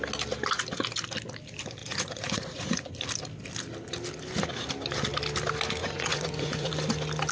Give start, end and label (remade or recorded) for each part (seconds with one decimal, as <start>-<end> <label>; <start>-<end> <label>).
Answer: 0.0-1.8 recorded; 1.8-2.9 remade; 2.9-5.8 recorded; 5.8-6.7 remade; 6.7-7.3 recorded